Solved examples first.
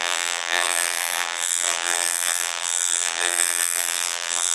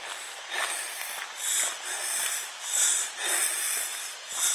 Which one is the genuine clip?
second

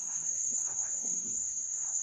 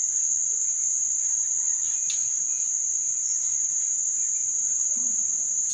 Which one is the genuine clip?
second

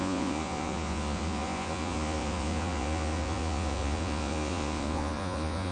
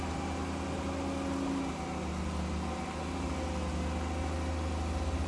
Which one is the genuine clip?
second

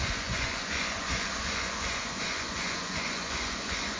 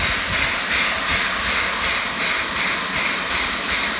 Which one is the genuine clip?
second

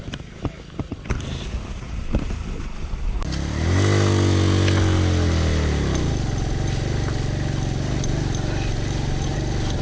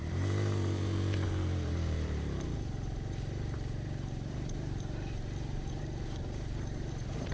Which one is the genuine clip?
first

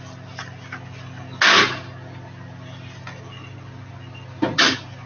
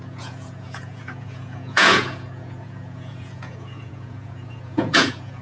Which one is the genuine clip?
first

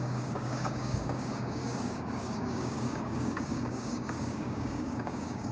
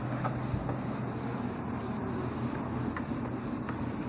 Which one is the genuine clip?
second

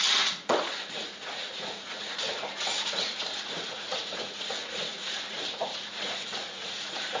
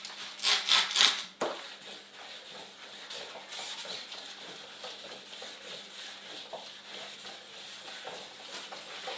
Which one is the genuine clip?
second